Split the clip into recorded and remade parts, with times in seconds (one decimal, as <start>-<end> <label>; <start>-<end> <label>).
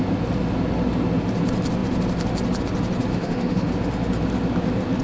0.0-3.1 recorded; 3.1-3.7 remade; 3.7-5.0 recorded